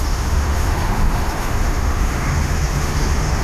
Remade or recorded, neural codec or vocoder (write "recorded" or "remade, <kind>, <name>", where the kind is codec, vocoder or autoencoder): remade, autoencoder, DAC-VAE